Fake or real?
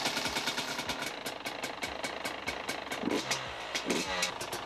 real